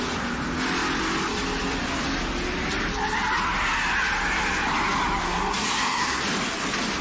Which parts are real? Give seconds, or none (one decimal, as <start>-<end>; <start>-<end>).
0.0-5.2; 6.2-7.0